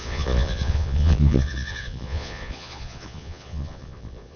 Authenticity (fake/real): fake